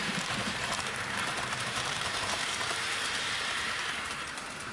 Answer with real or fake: fake